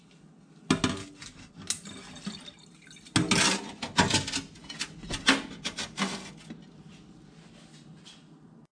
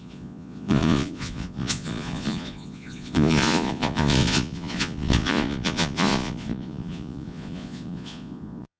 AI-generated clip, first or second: second